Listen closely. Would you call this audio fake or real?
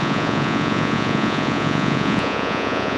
fake